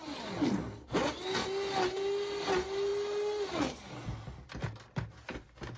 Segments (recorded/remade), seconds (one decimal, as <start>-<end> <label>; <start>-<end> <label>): 0.0-5.8 recorded